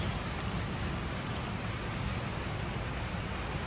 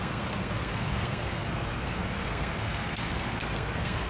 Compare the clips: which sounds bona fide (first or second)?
first